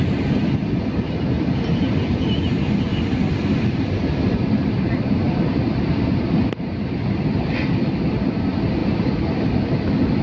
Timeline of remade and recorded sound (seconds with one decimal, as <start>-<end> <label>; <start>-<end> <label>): 0.0-2.9 recorded; 2.9-7.9 remade; 7.9-10.2 recorded